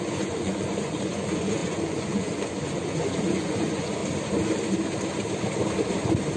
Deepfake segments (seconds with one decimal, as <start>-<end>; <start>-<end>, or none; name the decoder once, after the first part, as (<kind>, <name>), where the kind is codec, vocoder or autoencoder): 0.0-4.0 (vocoder, Vocos)